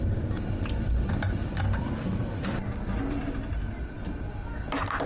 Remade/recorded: recorded